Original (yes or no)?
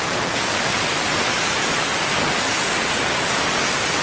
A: yes